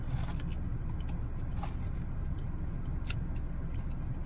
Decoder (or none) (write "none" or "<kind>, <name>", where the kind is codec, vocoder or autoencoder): none